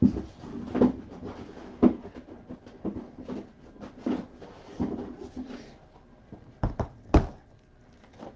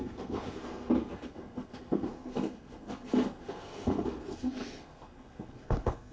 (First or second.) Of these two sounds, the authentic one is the first